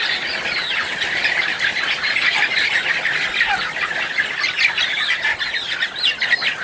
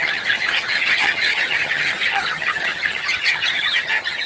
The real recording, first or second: first